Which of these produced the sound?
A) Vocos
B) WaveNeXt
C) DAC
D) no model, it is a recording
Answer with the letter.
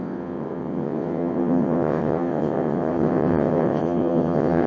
B